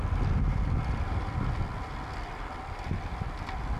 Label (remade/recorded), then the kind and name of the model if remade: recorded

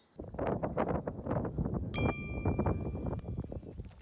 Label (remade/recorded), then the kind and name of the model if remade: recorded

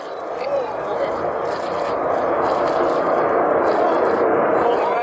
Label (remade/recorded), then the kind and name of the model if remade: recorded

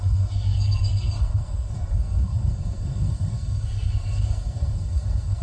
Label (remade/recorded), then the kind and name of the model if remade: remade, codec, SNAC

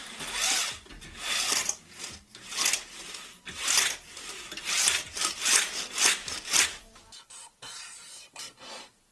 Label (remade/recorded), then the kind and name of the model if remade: recorded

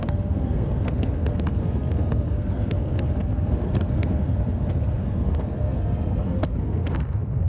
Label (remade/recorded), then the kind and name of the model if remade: remade, codec, SNAC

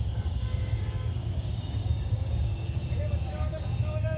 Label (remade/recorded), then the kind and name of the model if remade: remade, codec, DAC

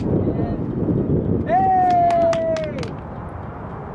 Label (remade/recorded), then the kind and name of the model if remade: recorded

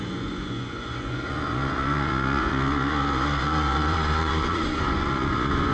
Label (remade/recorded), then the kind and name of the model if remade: remade, vocoder, Vocos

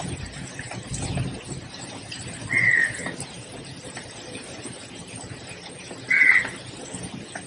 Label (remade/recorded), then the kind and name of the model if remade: recorded